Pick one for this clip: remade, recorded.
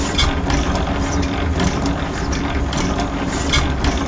recorded